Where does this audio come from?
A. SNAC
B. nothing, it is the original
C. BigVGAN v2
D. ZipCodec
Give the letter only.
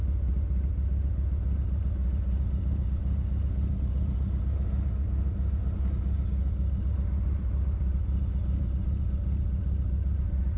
B